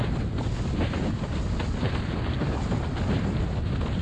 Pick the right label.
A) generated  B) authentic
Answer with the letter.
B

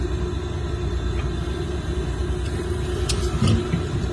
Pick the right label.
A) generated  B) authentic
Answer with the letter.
B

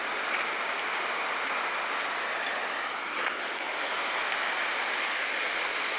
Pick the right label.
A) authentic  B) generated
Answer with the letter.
A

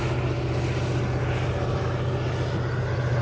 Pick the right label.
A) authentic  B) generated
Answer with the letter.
A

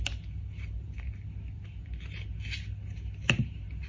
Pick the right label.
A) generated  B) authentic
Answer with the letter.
B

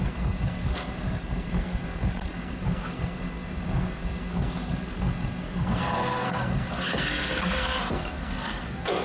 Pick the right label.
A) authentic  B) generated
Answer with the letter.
B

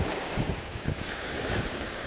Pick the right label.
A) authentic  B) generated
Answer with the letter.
B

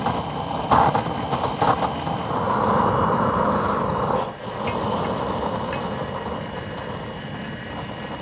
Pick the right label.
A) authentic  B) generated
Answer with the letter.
A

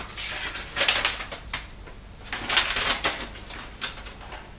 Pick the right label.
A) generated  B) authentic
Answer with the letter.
B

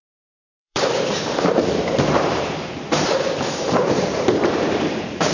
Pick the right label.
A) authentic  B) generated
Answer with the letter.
B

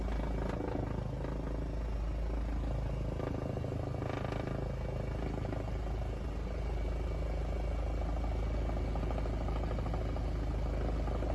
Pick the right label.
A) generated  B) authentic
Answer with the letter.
B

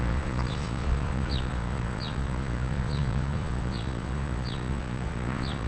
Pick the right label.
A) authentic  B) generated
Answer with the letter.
B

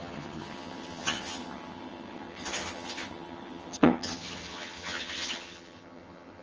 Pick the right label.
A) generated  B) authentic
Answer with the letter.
A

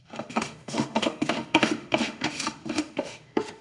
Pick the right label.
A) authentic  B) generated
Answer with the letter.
B